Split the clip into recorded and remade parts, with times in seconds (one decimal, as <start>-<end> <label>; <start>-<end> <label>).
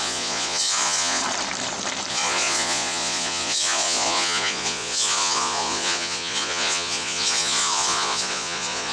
0.0-1.2 remade; 1.2-2.1 recorded; 2.1-8.9 remade